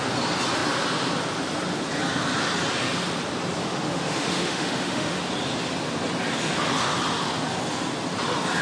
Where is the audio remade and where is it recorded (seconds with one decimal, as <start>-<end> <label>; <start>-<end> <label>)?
0.0-3.6 recorded; 3.6-5.2 remade; 5.2-8.6 recorded